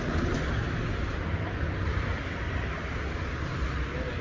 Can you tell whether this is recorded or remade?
recorded